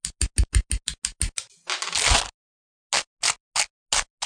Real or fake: real